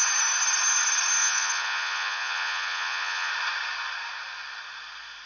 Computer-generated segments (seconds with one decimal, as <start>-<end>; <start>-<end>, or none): 1.2-3.3